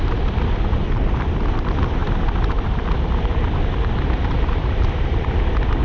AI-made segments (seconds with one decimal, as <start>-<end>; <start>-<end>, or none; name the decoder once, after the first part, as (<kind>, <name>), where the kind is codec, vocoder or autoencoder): 0.0-5.8 (vocoder, BigVGAN v2)

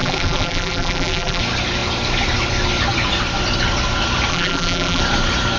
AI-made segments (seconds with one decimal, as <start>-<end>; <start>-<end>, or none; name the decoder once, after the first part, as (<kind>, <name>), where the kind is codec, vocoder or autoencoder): 0.0-1.4 (vocoder, BigVGAN v2); 4.3-5.0

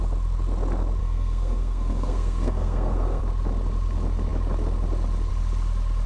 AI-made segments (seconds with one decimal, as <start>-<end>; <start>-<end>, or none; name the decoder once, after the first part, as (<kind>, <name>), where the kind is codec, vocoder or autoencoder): 1.0-3.2 (codec, SNAC)

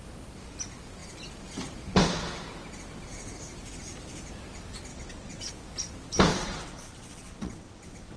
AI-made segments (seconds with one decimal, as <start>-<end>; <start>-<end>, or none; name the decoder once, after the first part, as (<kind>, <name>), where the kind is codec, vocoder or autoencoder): 4.9-5.5 (vocoder, WaveNeXt); 6.3-8.2

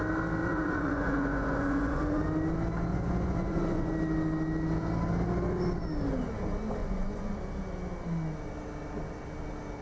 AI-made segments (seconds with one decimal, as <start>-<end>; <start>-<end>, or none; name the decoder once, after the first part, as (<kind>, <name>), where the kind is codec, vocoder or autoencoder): 0.4-2.2 (vocoder, Vocos); 2.9-3.9; 6.8-7.4